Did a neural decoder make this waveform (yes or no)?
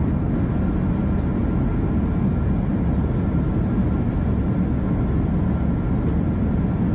no